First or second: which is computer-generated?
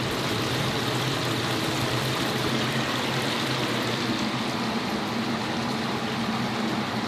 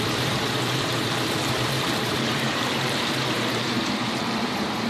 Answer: second